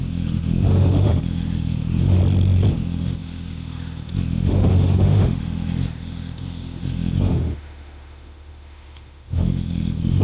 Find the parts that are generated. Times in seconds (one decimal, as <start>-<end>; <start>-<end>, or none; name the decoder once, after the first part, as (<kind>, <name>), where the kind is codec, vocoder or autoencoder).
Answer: 0.0-2.2 (autoencoder, DAC-VAE); 2.7-10.2